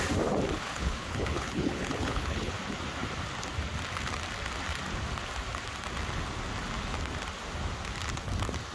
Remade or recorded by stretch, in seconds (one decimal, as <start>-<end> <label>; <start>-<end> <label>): 0.0-0.5 recorded; 0.5-2.5 remade; 2.5-8.7 recorded